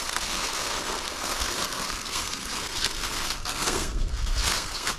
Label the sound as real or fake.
fake